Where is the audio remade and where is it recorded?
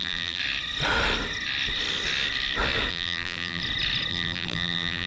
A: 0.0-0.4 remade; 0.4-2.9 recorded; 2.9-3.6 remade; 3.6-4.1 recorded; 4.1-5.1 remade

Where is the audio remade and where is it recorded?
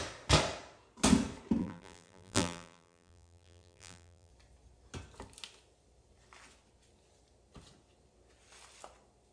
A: 0.0-1.6 recorded; 1.6-4.3 remade; 4.3-9.3 recorded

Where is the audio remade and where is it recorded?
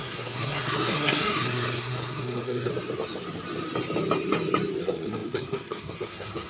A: 0.0-2.7 remade; 2.7-4.8 recorded; 4.8-6.5 remade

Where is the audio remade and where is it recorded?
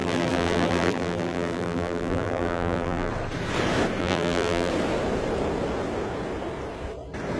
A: 0.0-3.1 remade; 3.1-4.0 recorded; 4.0-4.7 remade; 4.7-7.4 recorded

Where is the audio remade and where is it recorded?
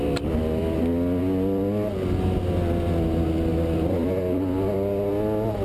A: 0.0-3.5 recorded; 3.5-4.1 remade; 4.1-5.6 recorded